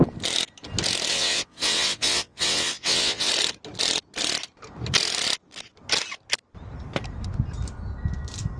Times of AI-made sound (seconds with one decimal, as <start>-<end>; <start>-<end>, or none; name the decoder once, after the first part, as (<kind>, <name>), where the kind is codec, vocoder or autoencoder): 1.1-3.3 (vocoder, WaveNeXt)